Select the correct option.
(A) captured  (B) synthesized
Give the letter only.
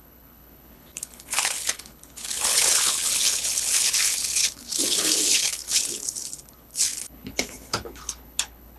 B